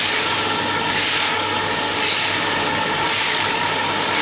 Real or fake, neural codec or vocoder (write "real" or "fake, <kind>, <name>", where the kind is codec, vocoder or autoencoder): fake, codec, DAC